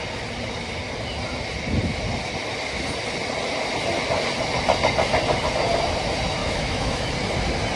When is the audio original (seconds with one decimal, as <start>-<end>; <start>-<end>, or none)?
0.0-6.4; 7.1-7.8